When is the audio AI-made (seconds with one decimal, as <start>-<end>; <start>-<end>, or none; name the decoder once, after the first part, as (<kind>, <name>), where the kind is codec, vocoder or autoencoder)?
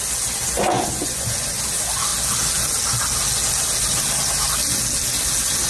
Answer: 0.7-1.6 (vocoder, Vocos)